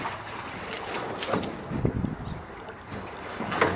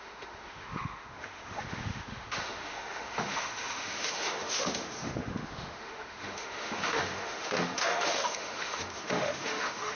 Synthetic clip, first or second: second